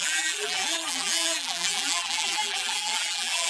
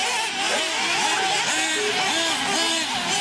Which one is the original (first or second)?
second